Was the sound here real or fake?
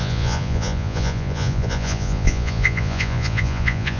fake